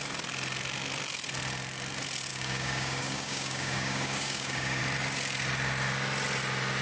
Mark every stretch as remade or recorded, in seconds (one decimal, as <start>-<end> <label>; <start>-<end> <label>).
0.0-2.3 recorded; 2.3-4.8 remade; 4.8-6.8 recorded